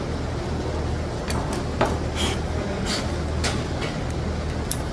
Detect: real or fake real